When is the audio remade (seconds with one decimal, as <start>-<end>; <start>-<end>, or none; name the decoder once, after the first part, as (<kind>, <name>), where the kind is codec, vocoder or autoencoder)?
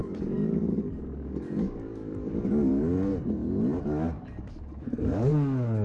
0.0-3.1 (codec, DAC); 3.8-5.8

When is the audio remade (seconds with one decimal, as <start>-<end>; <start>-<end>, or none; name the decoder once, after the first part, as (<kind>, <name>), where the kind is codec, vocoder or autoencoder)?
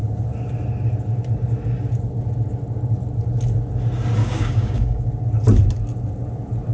4.2-5.1 (codec, DAC)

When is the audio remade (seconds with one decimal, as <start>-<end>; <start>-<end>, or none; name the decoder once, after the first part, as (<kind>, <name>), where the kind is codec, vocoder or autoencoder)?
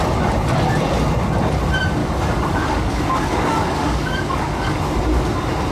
2.0-4.8 (codec, DAC)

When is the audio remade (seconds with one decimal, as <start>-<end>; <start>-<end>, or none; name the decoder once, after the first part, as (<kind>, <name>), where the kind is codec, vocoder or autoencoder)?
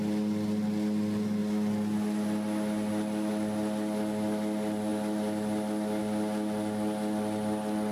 none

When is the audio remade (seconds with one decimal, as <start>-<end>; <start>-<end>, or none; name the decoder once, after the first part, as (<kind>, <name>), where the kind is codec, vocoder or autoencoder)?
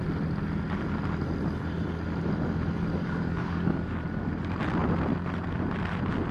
3.0-4.0 (codec, DAC)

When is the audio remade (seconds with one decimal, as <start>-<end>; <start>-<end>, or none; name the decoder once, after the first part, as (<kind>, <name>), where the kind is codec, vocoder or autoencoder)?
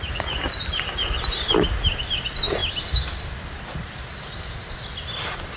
none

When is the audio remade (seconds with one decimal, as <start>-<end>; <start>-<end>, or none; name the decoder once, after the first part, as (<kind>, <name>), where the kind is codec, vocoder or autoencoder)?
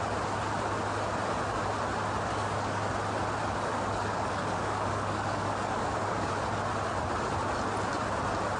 2.3-2.9 (codec, DAC); 3.4-6.3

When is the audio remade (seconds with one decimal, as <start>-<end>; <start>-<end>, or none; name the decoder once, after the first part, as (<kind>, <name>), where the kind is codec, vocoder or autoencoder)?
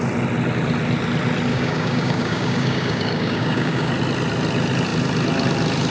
1.5-3.9 (codec, DAC)